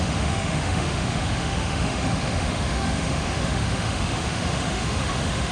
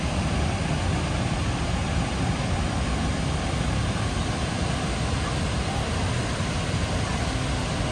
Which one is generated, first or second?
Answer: first